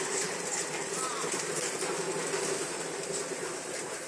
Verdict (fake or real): fake